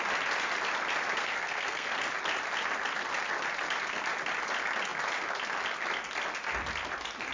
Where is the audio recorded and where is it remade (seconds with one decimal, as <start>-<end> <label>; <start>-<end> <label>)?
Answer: 0.0-1.2 recorded; 1.2-1.9 remade; 1.9-7.3 recorded